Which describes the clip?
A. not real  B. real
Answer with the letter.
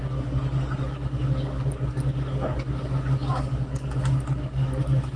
A